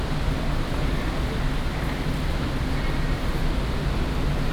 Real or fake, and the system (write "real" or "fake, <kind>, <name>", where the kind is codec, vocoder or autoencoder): real